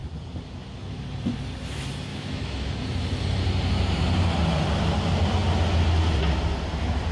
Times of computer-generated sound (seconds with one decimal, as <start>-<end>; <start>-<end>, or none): 2.1-2.7